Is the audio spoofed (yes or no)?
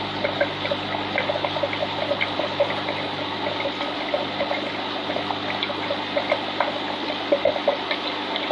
no